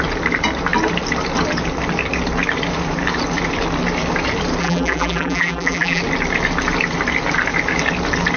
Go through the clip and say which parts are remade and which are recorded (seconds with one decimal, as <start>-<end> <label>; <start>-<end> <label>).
0.0-4.6 recorded; 4.6-6.0 remade; 6.0-8.4 recorded